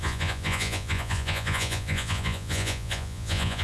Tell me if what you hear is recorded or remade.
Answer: remade